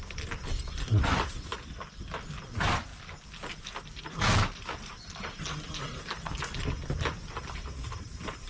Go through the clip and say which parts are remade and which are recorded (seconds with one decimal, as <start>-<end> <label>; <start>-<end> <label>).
0.0-8.5 recorded